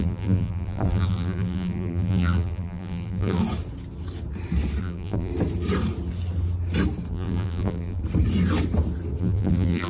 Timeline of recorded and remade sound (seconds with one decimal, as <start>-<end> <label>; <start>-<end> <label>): 0.0-3.4 remade; 3.4-4.8 recorded; 4.8-5.3 remade; 5.3-7.1 recorded; 7.1-8.0 remade; 8.0-9.2 recorded; 9.2-9.9 remade